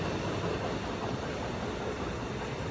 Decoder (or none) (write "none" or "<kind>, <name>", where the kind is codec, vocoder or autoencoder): none